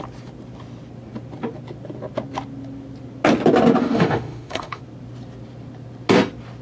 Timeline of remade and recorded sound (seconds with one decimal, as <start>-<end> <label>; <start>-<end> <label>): 0.0-3.8 recorded; 3.8-4.8 remade; 4.8-6.6 recorded